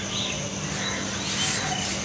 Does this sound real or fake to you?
real